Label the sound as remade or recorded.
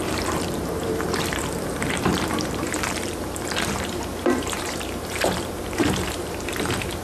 remade